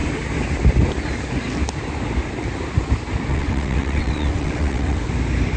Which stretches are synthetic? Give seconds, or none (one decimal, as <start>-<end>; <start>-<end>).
3.3-5.0